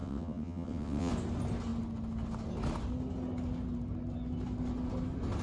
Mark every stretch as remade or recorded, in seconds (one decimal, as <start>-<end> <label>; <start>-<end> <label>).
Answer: 0.0-1.1 remade; 1.1-5.4 recorded